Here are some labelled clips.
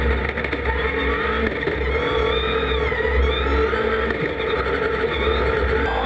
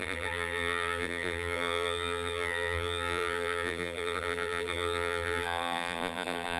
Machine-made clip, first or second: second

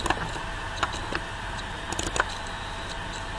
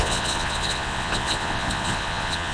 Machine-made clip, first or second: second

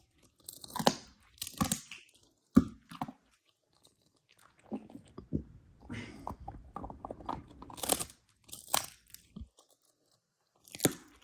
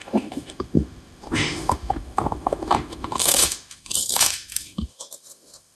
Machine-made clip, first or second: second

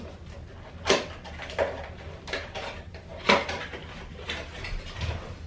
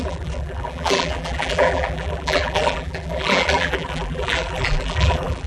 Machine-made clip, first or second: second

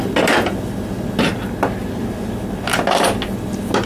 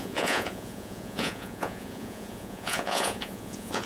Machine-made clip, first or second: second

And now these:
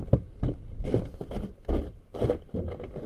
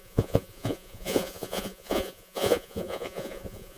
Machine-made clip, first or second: second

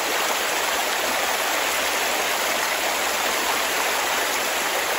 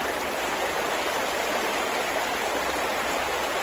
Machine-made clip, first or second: first